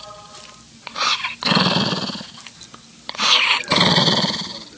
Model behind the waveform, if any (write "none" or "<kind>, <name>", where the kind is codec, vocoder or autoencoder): none